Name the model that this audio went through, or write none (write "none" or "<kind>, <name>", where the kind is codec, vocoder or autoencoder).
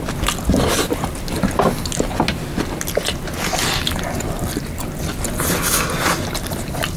none